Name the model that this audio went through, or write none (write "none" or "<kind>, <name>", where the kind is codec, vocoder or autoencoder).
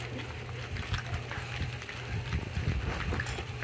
none